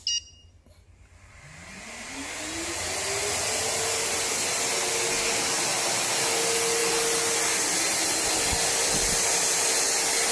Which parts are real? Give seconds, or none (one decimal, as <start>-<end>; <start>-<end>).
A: 0.0-10.3